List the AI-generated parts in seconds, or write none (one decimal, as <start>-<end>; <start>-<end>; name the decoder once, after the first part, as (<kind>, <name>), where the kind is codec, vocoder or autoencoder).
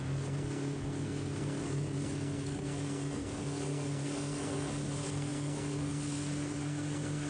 0.0-7.3 (codec, SNAC)